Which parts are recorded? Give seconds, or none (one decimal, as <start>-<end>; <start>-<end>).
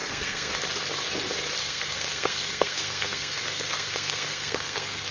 0.5-1.6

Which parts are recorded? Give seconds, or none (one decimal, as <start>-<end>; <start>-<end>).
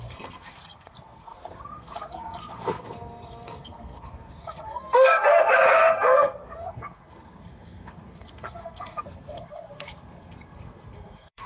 none